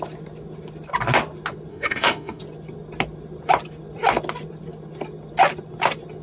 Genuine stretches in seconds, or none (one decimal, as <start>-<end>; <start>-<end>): 0.0-1.7; 2.4-6.2